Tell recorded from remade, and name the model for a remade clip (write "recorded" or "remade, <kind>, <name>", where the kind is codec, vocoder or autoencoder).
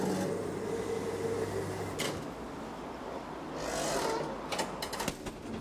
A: recorded